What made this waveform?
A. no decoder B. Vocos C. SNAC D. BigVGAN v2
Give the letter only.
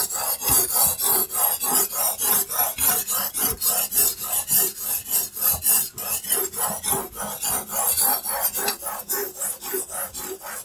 A